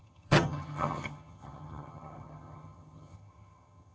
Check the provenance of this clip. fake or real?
fake